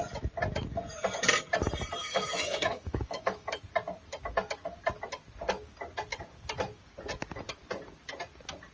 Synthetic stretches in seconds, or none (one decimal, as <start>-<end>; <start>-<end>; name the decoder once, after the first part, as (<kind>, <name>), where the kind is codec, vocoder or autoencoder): 2.0-3.6 (autoencoder, DAC-VAE)